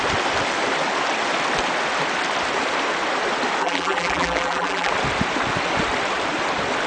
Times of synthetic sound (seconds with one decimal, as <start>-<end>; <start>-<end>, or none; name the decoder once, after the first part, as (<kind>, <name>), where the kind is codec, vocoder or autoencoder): 3.6-4.9 (vocoder, BigVGAN v2)